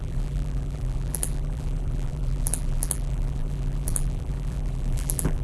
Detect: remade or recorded remade